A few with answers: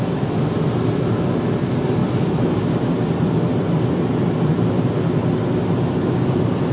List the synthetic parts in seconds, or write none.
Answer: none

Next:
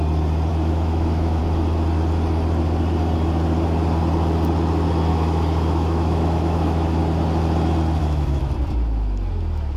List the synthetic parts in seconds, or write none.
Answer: 0.5-1.4 (autoencoder, DAC-VAE); 5.1-7.0; 8.0-8.5

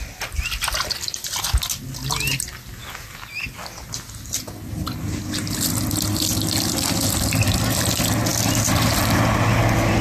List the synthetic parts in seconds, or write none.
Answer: none

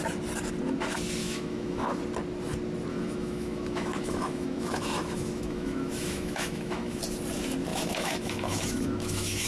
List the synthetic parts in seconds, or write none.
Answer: 1.2-2.0 (autoencoder, DAC-VAE); 2.9-7.0; 7.7-9.5